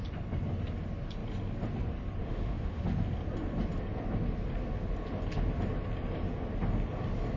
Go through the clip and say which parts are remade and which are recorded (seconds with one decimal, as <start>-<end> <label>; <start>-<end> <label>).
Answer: 0.0-2.2 recorded; 2.2-2.8 remade; 2.8-7.4 recorded